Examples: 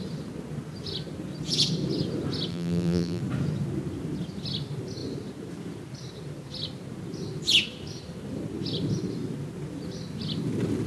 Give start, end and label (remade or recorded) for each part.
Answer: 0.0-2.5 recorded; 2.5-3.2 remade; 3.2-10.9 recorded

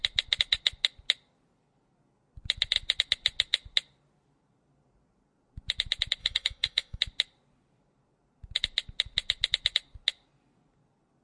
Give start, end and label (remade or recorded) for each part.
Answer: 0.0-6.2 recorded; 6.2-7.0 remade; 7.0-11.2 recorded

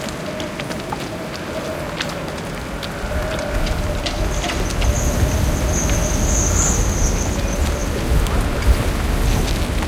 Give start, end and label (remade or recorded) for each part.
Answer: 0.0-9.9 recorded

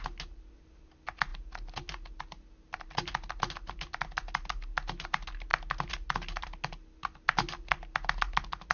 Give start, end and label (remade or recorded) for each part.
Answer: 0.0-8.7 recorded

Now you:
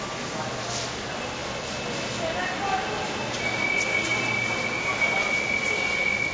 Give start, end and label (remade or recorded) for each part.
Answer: 0.0-6.3 recorded